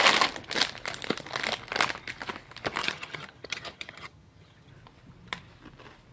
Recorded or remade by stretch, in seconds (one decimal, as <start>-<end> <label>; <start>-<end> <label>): 0.0-2.8 recorded; 2.8-4.7 remade; 4.7-6.1 recorded